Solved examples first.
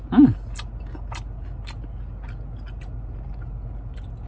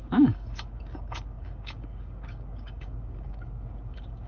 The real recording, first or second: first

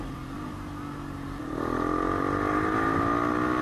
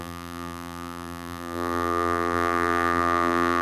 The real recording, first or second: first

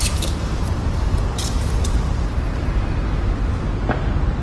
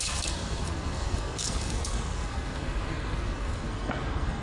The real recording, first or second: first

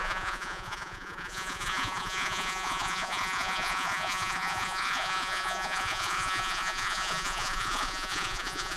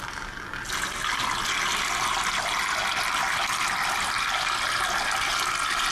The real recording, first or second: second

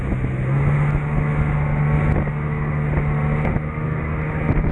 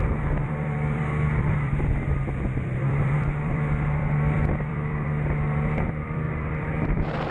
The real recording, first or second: first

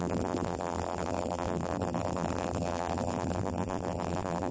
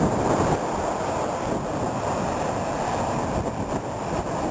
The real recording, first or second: second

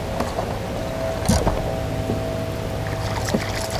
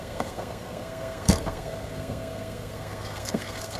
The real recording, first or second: first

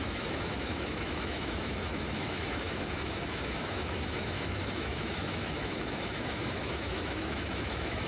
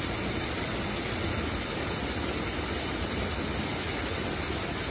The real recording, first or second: second